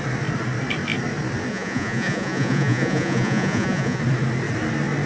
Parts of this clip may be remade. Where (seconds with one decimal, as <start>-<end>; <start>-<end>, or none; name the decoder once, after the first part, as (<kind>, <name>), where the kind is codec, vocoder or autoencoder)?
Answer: 1.5-4.0 (vocoder, Vocos)